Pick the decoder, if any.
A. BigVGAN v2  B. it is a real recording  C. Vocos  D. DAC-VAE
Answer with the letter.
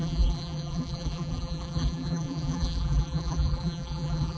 A